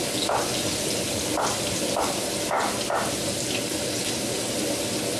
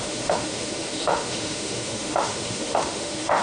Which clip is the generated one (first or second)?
second